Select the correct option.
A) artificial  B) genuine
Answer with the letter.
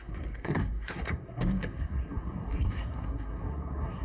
A